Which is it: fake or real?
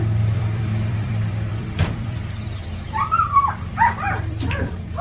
fake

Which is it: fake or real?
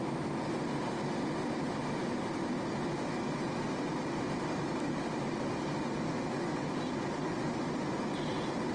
real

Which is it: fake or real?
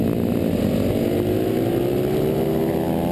real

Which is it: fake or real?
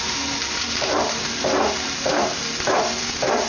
fake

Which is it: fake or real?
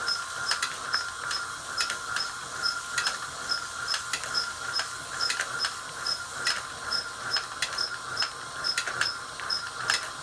fake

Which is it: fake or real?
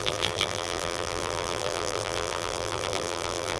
fake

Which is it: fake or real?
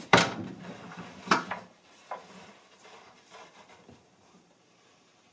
fake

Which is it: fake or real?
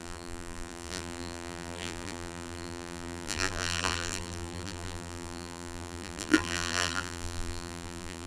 fake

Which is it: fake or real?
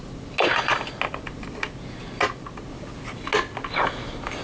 real